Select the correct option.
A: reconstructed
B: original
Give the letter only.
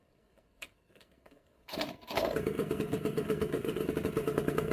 A